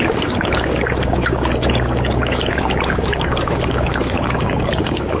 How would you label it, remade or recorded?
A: remade